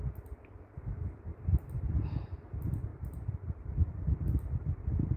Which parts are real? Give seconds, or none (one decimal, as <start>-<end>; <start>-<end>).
0.0-1.3; 1.9-2.9; 3.9-5.2